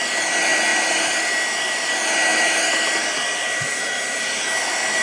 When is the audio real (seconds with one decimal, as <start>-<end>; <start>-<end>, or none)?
0.0-0.7; 1.9-2.3; 3.0-5.0